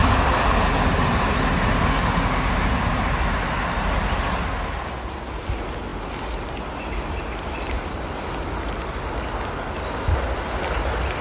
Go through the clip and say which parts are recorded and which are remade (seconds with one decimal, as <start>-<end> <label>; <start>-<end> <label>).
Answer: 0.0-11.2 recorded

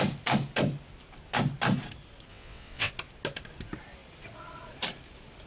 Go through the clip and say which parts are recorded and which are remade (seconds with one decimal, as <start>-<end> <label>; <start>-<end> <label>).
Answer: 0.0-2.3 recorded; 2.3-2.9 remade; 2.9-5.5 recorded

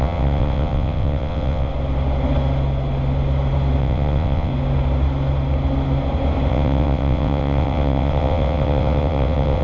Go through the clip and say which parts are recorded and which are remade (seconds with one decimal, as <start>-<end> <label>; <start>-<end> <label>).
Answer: 0.0-1.7 remade; 1.7-3.8 recorded; 3.8-4.5 remade; 4.5-6.5 recorded; 6.5-9.6 remade